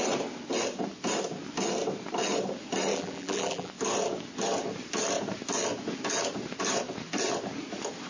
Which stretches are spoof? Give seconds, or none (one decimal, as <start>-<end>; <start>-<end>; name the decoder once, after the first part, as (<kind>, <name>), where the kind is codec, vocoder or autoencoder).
2.9-3.7 (vocoder, BigVGAN v2)